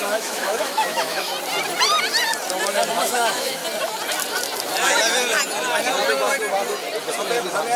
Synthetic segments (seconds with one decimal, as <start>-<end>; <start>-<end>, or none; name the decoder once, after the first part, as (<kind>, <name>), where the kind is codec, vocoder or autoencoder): 0.0-1.3 (autoencoder, DAC-VAE); 3.0-3.6